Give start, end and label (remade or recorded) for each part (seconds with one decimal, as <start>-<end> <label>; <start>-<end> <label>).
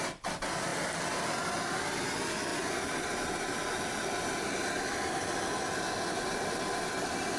0.0-7.4 recorded